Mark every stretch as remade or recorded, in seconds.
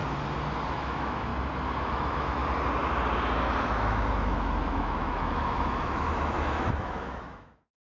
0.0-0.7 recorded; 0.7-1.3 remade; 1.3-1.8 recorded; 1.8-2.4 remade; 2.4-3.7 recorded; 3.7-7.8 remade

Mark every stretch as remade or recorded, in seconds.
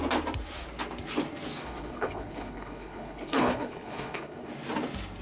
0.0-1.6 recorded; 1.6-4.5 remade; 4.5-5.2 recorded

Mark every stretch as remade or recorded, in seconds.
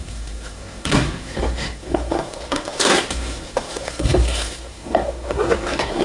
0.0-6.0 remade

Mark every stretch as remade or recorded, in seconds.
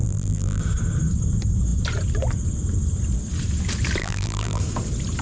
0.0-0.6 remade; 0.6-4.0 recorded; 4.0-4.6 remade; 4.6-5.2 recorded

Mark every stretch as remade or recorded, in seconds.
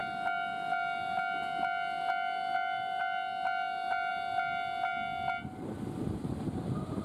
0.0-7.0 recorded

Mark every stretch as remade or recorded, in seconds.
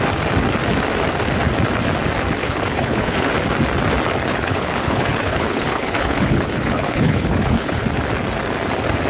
0.0-2.4 recorded; 2.4-3.3 remade; 3.3-4.3 recorded; 4.3-7.9 remade; 7.9-9.1 recorded